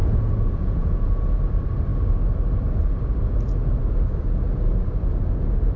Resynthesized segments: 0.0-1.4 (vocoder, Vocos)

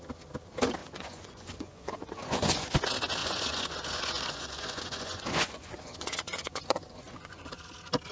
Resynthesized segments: 0.8-2.7 (vocoder, Vocos); 3.2-7.5

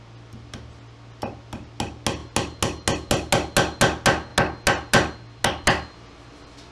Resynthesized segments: none

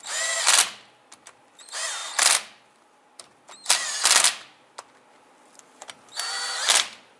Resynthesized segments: none

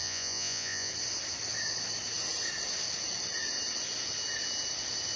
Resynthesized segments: 0.0-0.9 (vocoder, Vocos)